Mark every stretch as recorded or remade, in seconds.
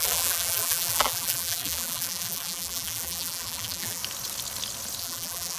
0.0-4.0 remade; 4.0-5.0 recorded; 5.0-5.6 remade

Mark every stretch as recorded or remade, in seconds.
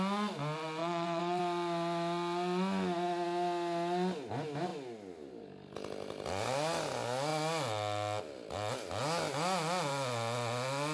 0.0-0.8 recorded; 0.8-1.4 remade; 1.4-10.9 recorded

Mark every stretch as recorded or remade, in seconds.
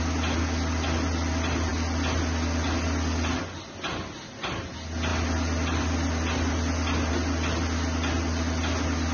0.0-9.1 recorded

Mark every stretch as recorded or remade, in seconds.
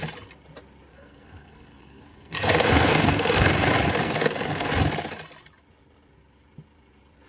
0.0-0.9 recorded; 0.9-3.5 remade; 3.5-4.0 recorded; 4.0-4.7 remade; 4.7-7.3 recorded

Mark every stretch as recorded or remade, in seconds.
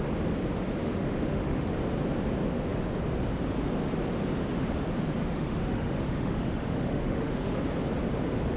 0.0-0.8 recorded; 0.8-1.7 remade; 1.7-5.2 recorded; 5.2-7.6 remade; 7.6-8.6 recorded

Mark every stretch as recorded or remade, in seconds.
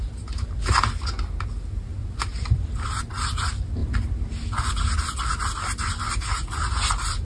0.0-2.0 recorded; 2.0-3.0 remade; 3.0-3.8 recorded; 3.8-4.7 remade; 4.7-7.2 recorded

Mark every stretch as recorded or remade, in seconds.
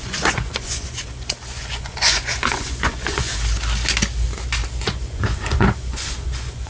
0.0-3.3 remade; 3.3-4.8 recorded; 4.8-6.7 remade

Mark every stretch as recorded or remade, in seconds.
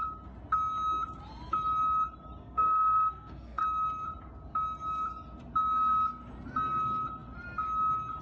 0.0-2.4 recorded; 2.4-3.6 remade; 3.6-8.2 recorded